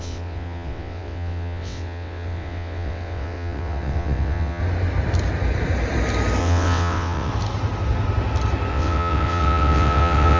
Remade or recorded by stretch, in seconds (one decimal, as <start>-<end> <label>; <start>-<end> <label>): 0.0-4.6 remade; 4.6-6.4 recorded; 6.4-7.3 remade; 7.3-8.7 recorded; 8.7-10.4 remade